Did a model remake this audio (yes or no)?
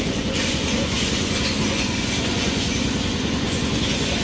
yes